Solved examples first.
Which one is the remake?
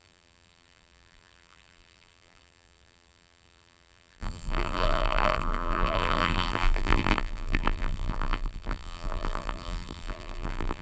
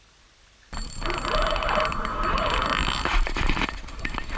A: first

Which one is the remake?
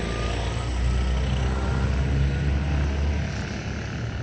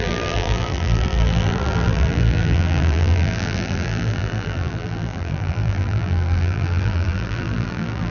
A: second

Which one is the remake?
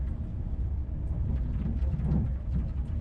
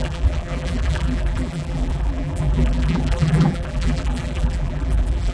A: second